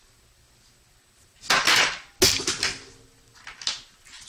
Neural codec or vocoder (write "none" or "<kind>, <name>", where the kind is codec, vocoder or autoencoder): none